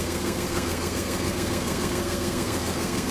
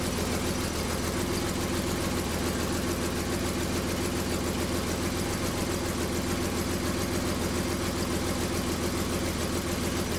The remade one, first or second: first